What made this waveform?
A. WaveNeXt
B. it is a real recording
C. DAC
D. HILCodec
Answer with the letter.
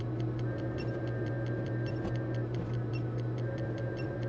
B